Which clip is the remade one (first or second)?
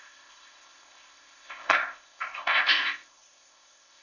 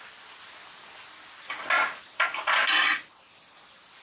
first